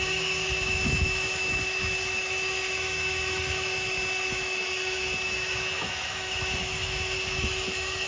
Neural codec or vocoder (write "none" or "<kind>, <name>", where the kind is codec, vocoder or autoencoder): autoencoder, DAC-VAE